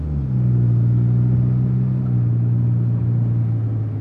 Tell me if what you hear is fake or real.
real